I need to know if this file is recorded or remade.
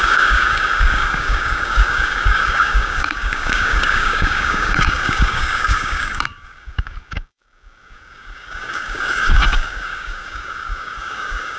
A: remade